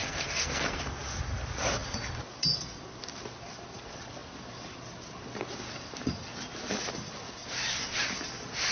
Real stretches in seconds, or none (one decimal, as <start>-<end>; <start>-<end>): 0.8-8.7